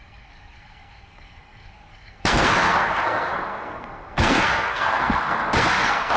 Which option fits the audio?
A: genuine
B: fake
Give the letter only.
B